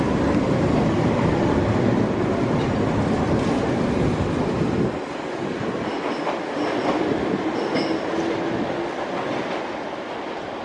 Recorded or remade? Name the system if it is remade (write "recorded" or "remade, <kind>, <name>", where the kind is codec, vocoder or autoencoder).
recorded